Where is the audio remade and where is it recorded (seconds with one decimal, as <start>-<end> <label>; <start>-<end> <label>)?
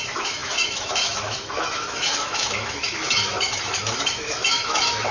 0.0-5.1 remade